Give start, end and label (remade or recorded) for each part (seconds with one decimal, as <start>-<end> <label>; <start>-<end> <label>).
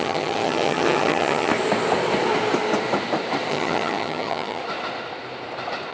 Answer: 0.0-1.5 remade; 1.5-3.5 recorded; 3.5-4.6 remade; 4.6-5.9 recorded